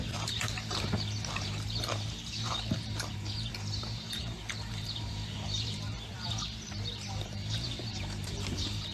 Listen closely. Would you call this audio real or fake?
fake